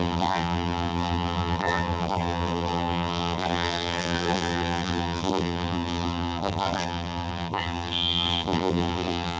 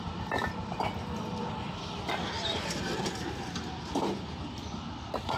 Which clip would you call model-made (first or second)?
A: first